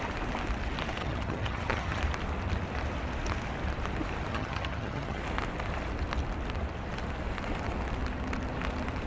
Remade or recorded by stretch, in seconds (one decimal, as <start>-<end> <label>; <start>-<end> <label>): 0.0-1.0 recorded; 1.0-2.0 remade; 2.0-4.3 recorded; 4.3-5.2 remade; 5.2-9.1 recorded